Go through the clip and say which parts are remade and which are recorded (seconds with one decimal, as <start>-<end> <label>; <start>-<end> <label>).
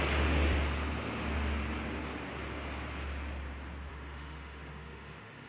0.0-3.9 recorded; 3.9-5.5 remade